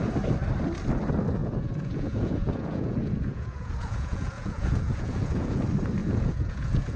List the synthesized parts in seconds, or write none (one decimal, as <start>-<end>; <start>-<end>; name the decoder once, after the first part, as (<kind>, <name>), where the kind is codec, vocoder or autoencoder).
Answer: 1.4-5.6 (vocoder, Vocos); 6.0-7.0